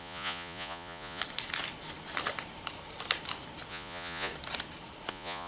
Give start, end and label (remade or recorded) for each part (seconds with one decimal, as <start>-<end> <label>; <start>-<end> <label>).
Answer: 0.0-1.2 remade; 1.2-3.7 recorded; 3.7-4.3 remade; 4.3-5.1 recorded; 5.1-5.5 remade